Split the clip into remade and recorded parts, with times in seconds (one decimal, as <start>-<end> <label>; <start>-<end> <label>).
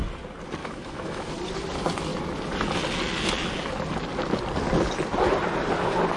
0.0-0.6 recorded; 0.6-1.3 remade; 1.3-6.2 recorded